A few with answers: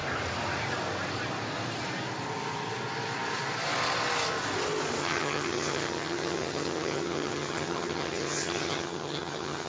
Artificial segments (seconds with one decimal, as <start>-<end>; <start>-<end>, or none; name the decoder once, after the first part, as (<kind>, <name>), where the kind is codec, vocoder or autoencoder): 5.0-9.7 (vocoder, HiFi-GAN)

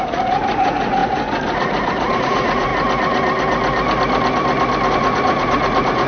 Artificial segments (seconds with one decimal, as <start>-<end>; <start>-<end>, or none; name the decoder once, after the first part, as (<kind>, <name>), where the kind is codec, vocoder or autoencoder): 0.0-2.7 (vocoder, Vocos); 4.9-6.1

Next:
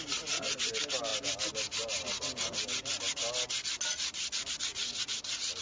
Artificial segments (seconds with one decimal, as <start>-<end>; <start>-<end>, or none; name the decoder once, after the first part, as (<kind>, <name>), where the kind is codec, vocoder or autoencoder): none

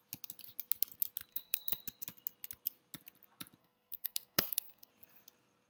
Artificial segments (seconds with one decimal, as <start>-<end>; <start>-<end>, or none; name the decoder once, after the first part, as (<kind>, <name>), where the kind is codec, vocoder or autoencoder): 1.3-1.8 (codec, SNAC); 3.6-4.9